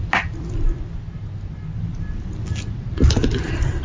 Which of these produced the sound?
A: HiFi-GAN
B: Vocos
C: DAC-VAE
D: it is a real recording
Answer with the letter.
D